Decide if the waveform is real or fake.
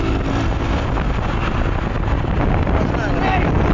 real